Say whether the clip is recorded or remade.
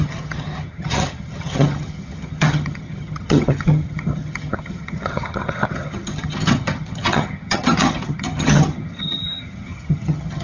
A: remade